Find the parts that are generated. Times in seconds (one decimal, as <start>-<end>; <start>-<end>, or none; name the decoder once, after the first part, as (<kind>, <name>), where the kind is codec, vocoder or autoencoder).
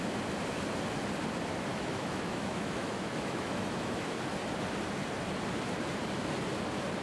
1.7-4.2 (autoencoder, DAC-VAE)